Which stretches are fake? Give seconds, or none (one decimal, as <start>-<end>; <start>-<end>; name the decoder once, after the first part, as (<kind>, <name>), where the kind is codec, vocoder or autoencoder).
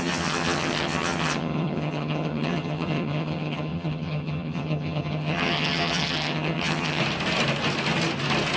0.0-7.0 (vocoder, HiFi-GAN)